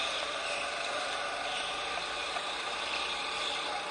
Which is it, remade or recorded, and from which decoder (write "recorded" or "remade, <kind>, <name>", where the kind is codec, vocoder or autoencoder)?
recorded